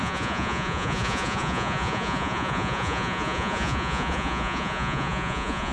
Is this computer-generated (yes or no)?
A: yes